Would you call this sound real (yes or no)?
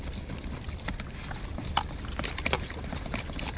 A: yes